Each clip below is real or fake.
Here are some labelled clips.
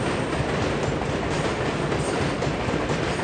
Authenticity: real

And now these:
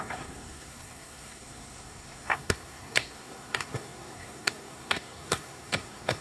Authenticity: fake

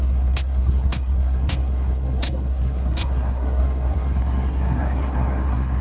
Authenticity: fake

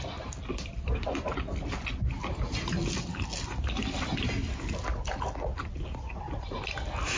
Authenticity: real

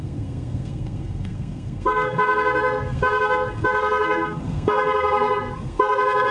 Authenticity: fake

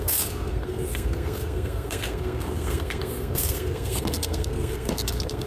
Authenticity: fake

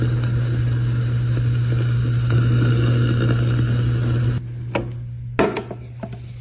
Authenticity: real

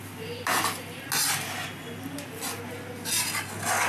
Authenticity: real